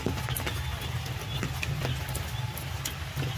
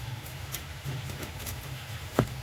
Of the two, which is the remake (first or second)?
second